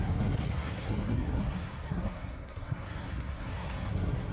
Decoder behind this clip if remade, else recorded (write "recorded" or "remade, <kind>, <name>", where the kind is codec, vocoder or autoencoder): remade, codec, SNAC